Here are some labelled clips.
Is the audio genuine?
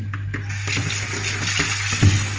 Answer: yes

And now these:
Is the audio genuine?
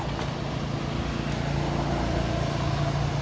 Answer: yes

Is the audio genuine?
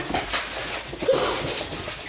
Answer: yes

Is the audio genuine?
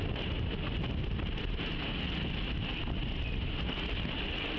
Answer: yes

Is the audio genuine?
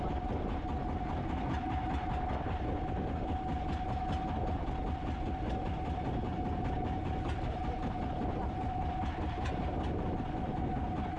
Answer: yes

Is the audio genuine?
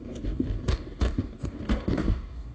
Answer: no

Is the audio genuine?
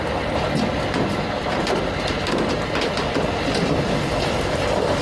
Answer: yes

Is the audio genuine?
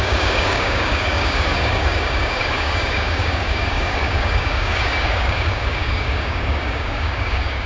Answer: no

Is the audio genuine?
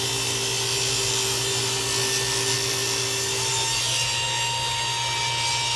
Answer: yes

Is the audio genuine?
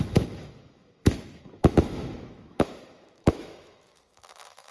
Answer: no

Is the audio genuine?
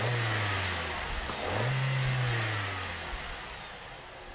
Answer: yes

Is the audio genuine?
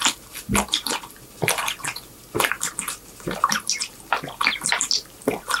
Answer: yes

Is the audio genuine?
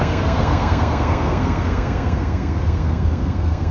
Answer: no